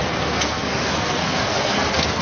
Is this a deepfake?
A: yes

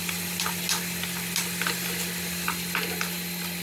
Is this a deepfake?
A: no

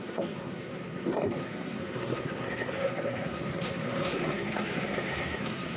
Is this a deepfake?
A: yes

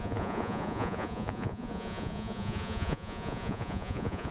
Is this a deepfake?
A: yes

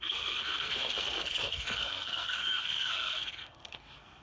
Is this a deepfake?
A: yes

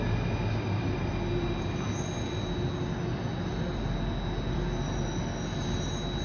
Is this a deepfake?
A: no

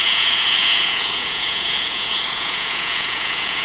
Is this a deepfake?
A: yes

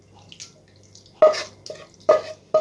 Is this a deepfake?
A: no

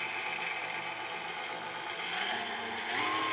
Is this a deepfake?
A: no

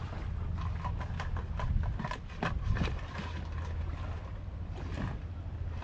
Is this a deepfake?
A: no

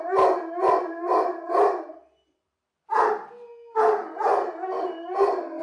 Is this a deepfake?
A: no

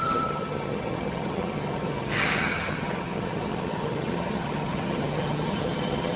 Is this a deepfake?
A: yes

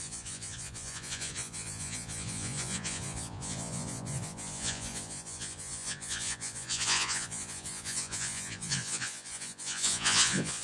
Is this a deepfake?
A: yes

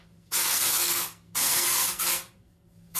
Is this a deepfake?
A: yes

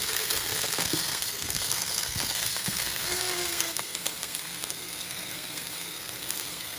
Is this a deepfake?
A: yes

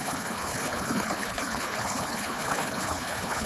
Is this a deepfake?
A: yes